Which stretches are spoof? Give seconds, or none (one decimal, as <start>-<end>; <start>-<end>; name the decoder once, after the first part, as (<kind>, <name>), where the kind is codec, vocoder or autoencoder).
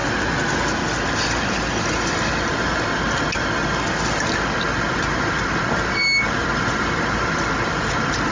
4.8-8.3 (vocoder, BigVGAN v2)